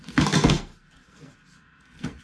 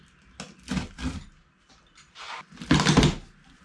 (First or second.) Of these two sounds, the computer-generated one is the first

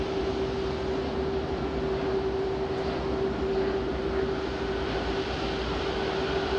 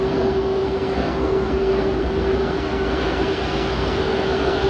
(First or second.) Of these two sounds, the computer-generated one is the second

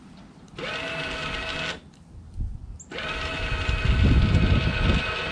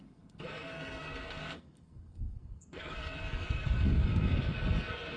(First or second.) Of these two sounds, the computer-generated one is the second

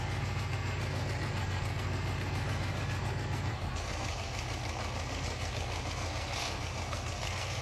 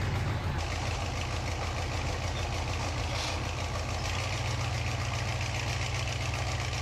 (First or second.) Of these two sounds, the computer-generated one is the first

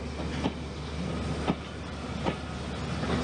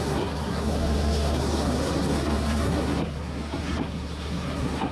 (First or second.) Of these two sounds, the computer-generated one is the second